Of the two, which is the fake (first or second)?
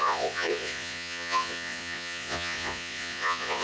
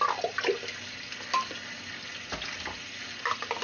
first